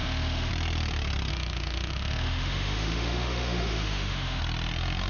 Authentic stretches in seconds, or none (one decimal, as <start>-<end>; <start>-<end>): 0.5-1.3; 4.4-5.1